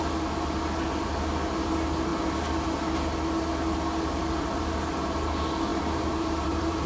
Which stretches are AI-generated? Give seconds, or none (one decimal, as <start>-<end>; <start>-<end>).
5.7-6.9

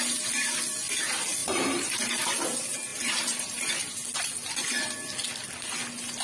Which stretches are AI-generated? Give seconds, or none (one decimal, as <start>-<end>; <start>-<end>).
1.4-2.4; 2.9-3.7

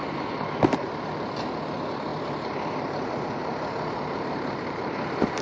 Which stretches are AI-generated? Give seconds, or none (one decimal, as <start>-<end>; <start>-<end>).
2.1-5.4

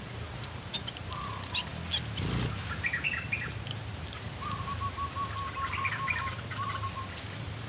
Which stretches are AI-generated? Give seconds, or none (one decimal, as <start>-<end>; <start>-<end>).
none

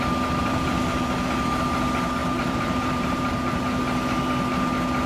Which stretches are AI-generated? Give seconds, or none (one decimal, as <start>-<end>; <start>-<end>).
0.4-1.2; 2.2-3.6